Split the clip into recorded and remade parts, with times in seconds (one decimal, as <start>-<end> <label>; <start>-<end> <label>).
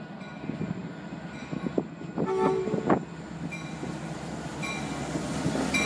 0.0-5.9 recorded